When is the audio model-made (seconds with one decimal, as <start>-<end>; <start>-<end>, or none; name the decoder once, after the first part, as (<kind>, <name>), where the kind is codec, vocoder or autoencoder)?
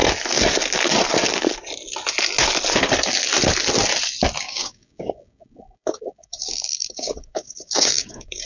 4.4-8.5 (codec, DAC)